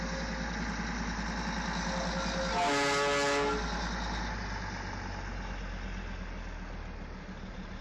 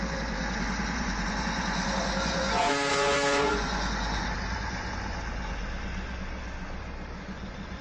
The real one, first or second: first